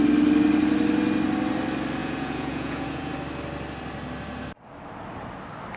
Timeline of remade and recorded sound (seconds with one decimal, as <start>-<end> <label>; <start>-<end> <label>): 0.0-2.0 recorded; 2.0-3.1 remade; 3.1-5.8 recorded